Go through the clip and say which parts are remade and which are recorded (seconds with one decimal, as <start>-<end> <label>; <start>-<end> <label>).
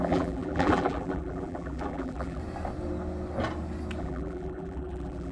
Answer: 0.0-2.4 remade; 2.4-4.0 recorded; 4.0-5.3 remade